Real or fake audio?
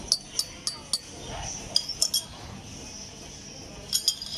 real